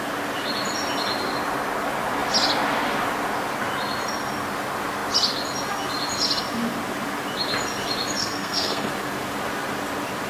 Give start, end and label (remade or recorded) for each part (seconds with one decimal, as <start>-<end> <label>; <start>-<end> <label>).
0.0-8.2 recorded; 8.2-8.9 remade; 8.9-10.3 recorded